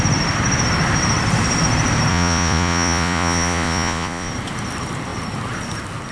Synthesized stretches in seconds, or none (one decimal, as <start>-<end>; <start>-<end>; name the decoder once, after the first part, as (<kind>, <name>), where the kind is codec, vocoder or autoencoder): 2.1-4.3 (vocoder, Vocos)